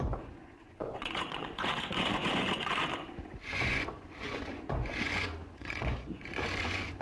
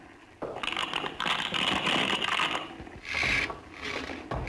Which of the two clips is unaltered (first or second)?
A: second